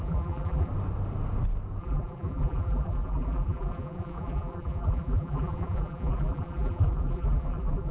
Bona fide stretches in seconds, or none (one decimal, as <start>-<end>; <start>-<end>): 0.7-1.8